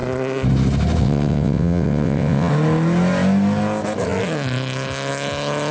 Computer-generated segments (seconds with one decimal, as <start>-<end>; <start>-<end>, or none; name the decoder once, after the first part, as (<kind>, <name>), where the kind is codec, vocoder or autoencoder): 1.0-2.5 (vocoder, WaveNeXt)